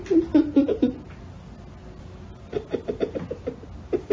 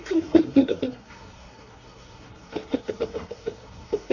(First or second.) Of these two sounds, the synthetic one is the second